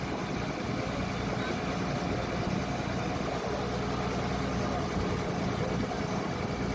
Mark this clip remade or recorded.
recorded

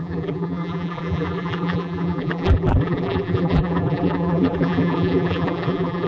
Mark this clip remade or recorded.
remade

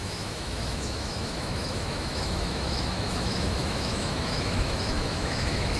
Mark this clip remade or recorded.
remade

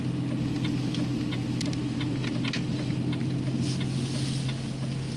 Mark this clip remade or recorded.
recorded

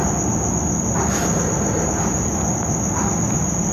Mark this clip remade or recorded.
recorded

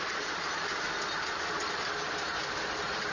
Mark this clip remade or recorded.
recorded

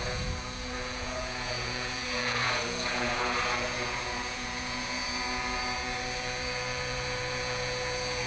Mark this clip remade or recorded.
remade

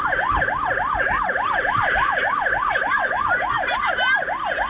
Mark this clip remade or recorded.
recorded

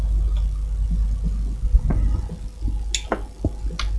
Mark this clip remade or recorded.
recorded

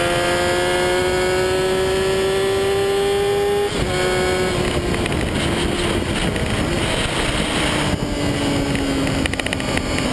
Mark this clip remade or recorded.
recorded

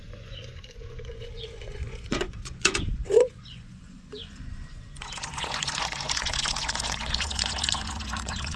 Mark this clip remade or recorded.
remade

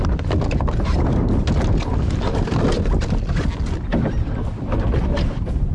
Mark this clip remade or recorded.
recorded